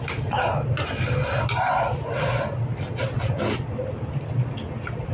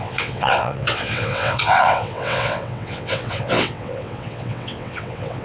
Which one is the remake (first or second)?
second